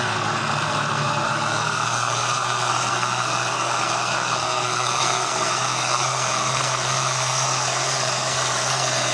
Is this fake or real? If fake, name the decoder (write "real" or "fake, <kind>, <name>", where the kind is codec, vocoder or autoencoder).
fake, codec, SNAC